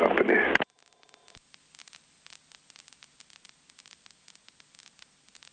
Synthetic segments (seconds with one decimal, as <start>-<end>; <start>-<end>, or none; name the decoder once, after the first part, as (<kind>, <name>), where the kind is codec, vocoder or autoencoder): none